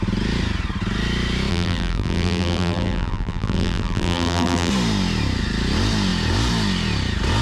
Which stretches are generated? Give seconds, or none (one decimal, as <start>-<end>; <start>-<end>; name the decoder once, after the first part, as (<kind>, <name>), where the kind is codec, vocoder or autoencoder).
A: 1.5-4.7 (vocoder, BigVGAN v2)

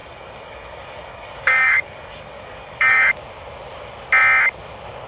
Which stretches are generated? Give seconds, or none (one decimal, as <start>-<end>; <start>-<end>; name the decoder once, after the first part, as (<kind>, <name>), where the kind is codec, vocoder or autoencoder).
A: 0.0-3.1 (codec, DAC)

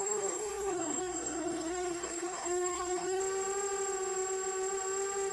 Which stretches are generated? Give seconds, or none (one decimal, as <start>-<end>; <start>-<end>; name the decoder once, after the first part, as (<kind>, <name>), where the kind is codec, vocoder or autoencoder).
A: 0.0-3.2 (codec, SNAC)

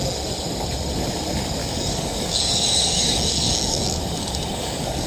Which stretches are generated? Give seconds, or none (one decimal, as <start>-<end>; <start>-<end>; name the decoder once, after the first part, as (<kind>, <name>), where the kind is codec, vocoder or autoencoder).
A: 1.6-5.1 (codec, DAC)

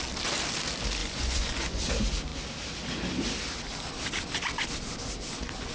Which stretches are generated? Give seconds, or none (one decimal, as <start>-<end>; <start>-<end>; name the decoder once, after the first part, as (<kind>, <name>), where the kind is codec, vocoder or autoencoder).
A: 1.0-1.8 (vocoder, Vocos)

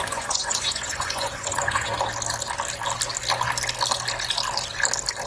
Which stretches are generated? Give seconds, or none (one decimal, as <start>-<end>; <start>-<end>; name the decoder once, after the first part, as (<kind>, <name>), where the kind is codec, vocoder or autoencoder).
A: 0.0-1.9 (vocoder, Vocos)